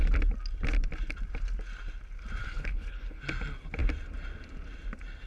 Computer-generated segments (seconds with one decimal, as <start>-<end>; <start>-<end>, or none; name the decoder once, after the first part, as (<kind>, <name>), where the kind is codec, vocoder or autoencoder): 2.4-3.2 (codec, HILCodec)